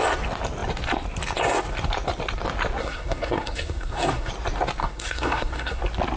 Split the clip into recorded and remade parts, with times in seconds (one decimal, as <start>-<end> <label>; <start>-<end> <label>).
0.0-2.8 recorded; 2.8-4.3 remade; 4.3-4.8 recorded; 4.8-5.8 remade; 5.8-6.2 recorded